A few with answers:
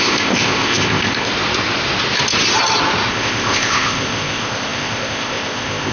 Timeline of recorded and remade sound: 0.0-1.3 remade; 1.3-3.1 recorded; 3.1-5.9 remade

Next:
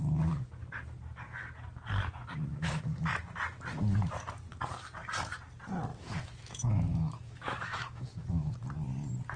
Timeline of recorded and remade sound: 0.0-2.5 recorded; 2.5-3.1 remade; 3.1-5.9 recorded; 5.9-8.5 remade; 8.5-9.4 recorded